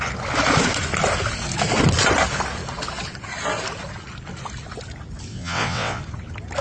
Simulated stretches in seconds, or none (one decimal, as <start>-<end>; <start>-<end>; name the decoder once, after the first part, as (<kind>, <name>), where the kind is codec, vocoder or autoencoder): 5.3-6.0 (vocoder, WaveNeXt)